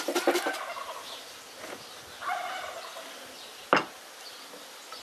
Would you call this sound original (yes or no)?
yes